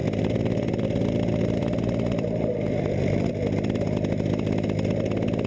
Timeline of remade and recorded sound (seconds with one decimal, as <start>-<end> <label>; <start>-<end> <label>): 0.0-3.3 remade; 3.3-5.5 recorded